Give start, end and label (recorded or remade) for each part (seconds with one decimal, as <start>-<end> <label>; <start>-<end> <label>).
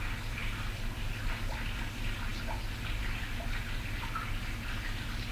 0.0-5.3 recorded